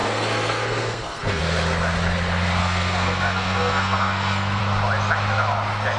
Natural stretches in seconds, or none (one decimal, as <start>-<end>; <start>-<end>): 1.4-2.6; 4.6-6.0